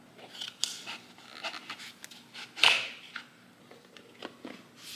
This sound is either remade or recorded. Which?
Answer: recorded